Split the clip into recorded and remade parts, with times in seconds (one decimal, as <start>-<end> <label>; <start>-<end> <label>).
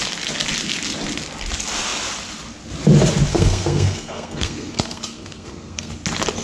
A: 0.0-3.3 recorded; 3.3-5.9 remade; 5.9-6.4 recorded